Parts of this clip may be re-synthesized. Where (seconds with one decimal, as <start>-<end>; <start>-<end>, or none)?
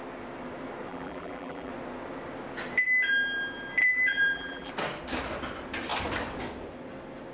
0.9-1.7; 3.8-4.7